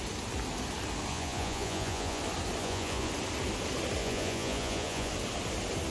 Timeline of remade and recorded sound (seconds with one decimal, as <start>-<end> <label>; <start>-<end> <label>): 0.0-1.1 recorded; 1.1-2.2 remade; 2.2-2.6 recorded; 2.6-3.1 remade; 3.1-4.0 recorded; 4.0-5.1 remade; 5.1-5.9 recorded

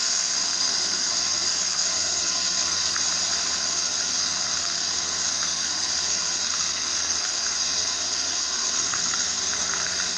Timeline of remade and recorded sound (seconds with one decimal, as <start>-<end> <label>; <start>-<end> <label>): 0.0-3.0 remade; 3.0-3.6 recorded; 3.6-10.2 remade

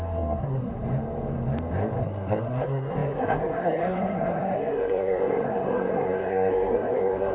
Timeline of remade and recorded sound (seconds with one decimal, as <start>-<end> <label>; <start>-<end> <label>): 0.0-0.7 remade; 0.7-2.0 recorded; 2.0-7.3 remade

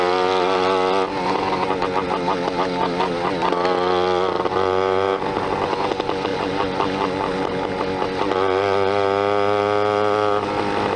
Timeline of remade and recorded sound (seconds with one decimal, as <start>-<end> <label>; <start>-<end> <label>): 0.0-6.3 recorded; 6.3-7.8 remade; 7.8-11.0 recorded

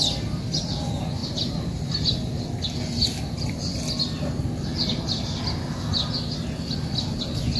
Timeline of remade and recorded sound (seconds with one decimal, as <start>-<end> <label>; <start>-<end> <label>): 0.0-7.6 recorded